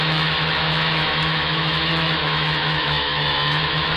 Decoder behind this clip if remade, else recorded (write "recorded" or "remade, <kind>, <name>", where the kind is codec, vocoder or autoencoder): remade, autoencoder, DAC-VAE